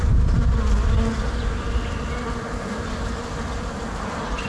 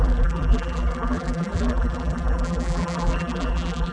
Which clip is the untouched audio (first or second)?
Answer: first